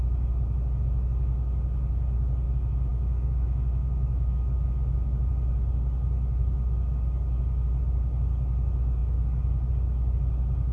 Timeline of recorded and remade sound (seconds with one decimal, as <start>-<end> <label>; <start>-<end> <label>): 0.0-2.9 recorded; 2.9-5.3 remade; 5.3-10.7 recorded